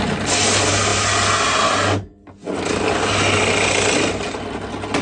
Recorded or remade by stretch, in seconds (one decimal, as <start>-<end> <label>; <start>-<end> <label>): 0.0-5.0 recorded